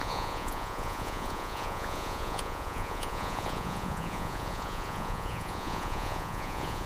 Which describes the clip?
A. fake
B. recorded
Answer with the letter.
A